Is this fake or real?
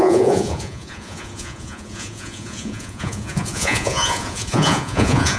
fake